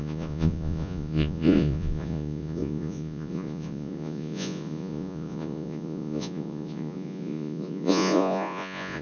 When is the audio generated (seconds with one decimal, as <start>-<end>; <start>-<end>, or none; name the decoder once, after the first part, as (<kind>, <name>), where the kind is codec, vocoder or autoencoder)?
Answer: 0.0-9.0 (vocoder, Vocos)